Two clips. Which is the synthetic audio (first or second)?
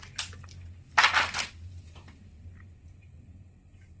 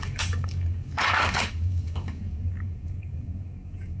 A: second